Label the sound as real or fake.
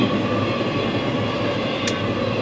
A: real